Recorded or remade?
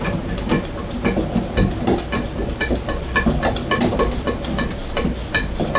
recorded